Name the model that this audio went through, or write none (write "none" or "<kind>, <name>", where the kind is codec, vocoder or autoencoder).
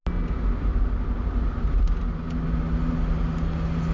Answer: none